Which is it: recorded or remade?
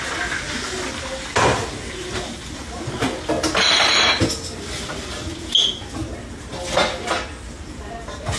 recorded